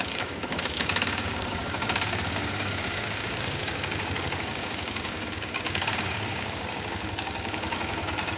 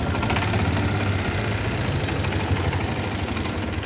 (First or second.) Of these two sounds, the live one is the second